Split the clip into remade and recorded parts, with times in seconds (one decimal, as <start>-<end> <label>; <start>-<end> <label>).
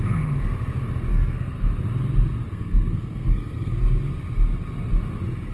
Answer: 0.0-1.1 recorded; 1.1-1.7 remade; 1.7-2.5 recorded; 2.5-3.8 remade; 3.8-5.5 recorded